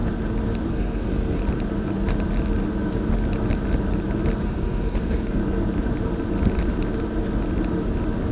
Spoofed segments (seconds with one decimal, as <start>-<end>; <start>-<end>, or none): 0.7-1.4; 4.4-5.4